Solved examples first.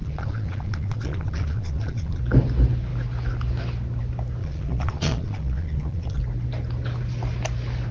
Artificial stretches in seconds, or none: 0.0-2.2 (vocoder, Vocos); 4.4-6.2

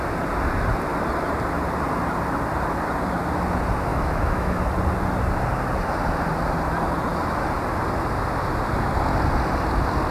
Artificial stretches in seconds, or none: 3.9-4.6 (autoencoder, DAC-VAE)

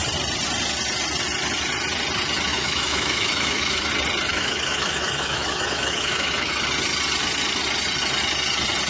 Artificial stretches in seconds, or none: 2.5-3.9 (autoencoder, DAC-VAE); 4.3-6.6

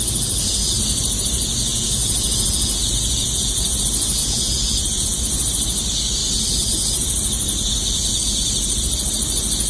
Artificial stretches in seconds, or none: 1.7-3.8 (vocoder, Vocos); 4.2-5.2

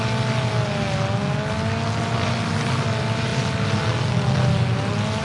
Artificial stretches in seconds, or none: none

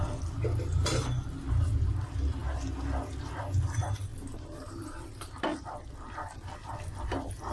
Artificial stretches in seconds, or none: none

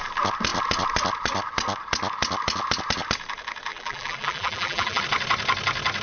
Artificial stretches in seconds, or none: 3.7-5.0 (vocoder, BigVGAN v2)

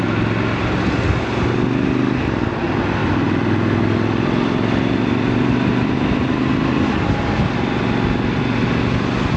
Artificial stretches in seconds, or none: 3.0-6.3 (vocoder, BigVGAN v2)